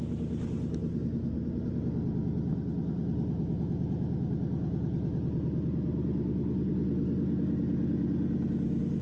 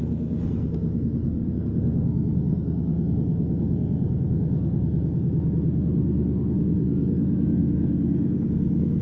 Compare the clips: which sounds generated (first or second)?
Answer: second